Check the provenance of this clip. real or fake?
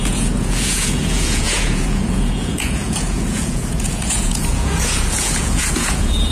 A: fake